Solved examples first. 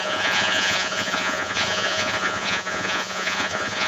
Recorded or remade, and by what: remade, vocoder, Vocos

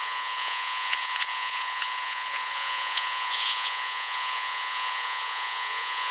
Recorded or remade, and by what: remade, vocoder, Vocos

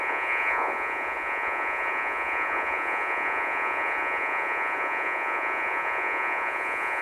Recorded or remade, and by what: remade, vocoder, Vocos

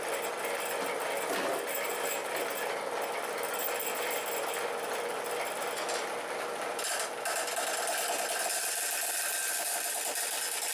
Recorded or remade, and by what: recorded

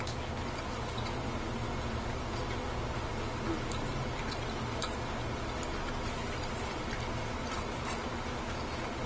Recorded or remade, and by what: recorded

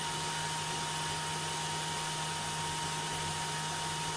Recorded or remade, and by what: recorded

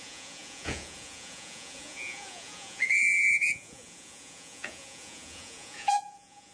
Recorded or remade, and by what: remade, vocoder, Vocos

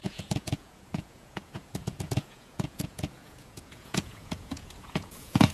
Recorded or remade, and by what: remade, vocoder, Vocos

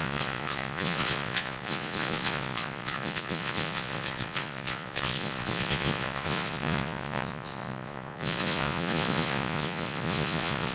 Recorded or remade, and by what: remade, vocoder, Vocos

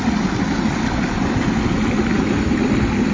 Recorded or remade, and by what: recorded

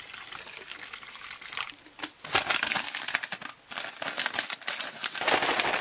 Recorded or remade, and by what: recorded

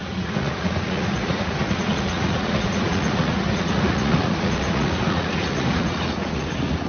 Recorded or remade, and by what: remade, vocoder, Vocos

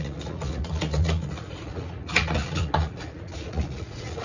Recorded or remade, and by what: remade, vocoder, Vocos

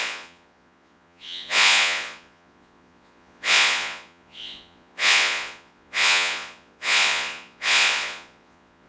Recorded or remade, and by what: remade, vocoder, Vocos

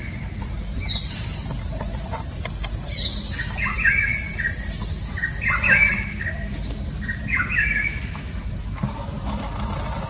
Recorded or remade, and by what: recorded